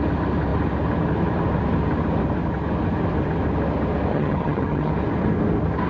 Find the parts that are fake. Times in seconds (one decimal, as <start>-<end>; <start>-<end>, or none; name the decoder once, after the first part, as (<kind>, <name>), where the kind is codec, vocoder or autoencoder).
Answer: 4.1-4.9 (vocoder, HiFi-GAN)